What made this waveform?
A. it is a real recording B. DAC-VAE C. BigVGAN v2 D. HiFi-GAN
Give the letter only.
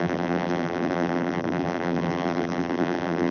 C